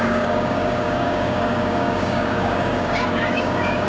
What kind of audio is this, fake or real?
fake